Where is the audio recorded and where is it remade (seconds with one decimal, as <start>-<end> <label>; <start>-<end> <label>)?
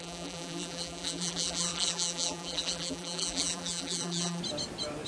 0.0-4.4 remade; 4.4-5.1 recorded